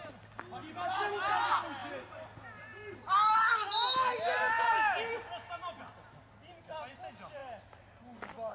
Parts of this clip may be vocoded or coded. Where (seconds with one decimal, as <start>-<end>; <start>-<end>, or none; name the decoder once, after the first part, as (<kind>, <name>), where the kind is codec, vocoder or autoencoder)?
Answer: none